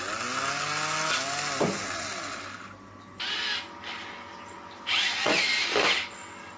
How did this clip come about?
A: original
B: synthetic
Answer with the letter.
A